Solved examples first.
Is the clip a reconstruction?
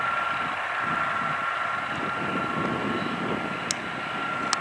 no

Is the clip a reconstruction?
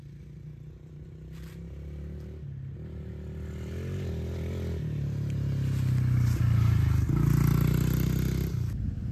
no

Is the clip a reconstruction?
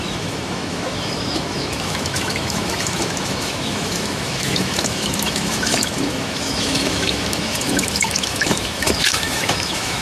yes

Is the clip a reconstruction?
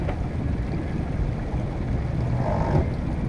no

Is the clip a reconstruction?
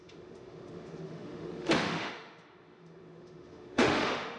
yes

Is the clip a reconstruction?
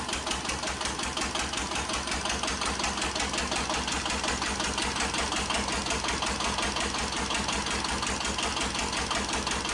no